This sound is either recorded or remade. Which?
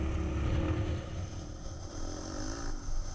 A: recorded